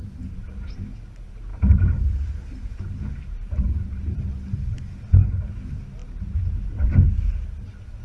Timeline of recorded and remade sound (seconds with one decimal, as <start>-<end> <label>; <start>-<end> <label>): 0.0-1.5 recorded; 1.5-4.2 remade; 4.2-6.0 recorded; 6.0-6.9 remade; 6.9-8.0 recorded